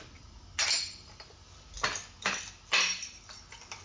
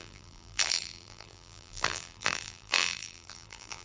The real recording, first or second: first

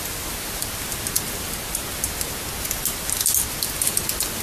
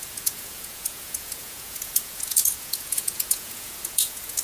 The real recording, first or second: first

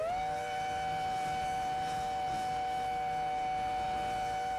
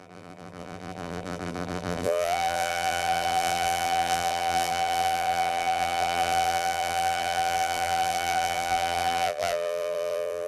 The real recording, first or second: first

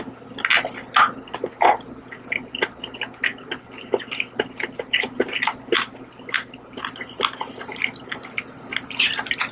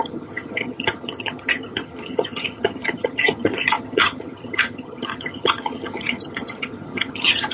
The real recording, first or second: first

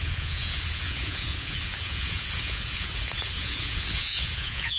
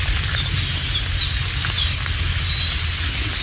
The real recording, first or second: second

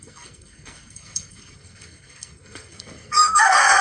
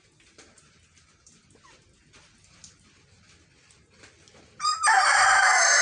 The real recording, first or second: second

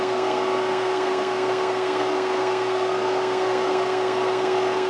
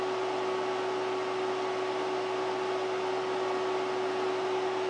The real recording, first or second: second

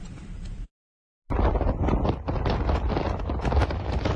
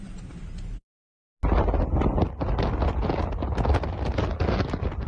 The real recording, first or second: second